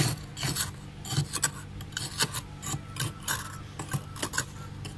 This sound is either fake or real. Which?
real